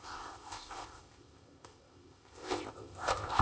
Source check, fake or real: fake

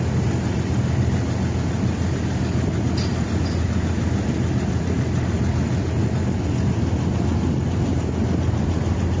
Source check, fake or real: real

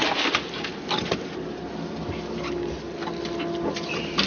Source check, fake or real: real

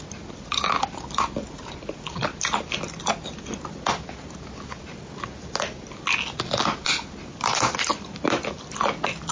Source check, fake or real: real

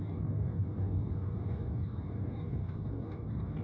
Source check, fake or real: fake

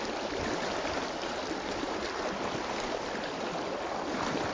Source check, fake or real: fake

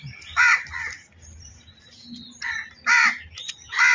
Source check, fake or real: real